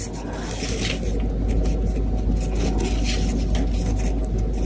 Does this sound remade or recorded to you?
recorded